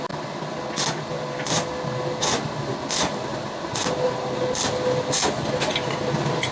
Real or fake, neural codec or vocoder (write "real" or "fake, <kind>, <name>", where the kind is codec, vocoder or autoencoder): real